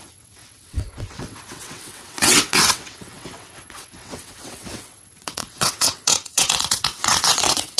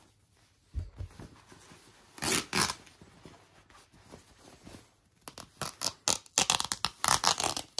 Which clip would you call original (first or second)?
second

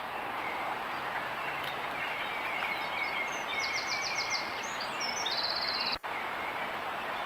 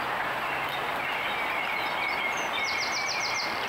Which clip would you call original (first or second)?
second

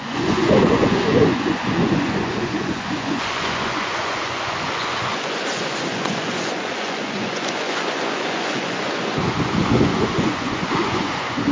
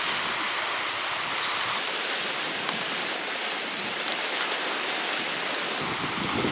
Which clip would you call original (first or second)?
second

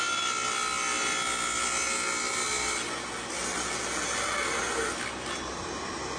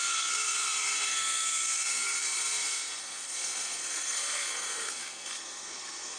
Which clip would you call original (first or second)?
first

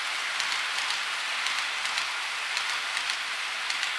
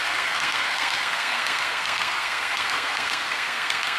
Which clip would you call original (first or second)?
first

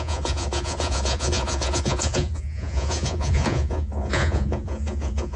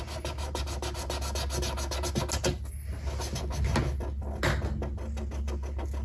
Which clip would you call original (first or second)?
second